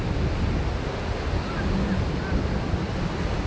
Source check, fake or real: real